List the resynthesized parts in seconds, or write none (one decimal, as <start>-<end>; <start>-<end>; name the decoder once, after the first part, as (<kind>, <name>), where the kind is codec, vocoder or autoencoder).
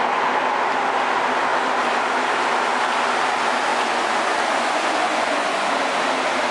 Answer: 3.7-5.7 (vocoder, Vocos)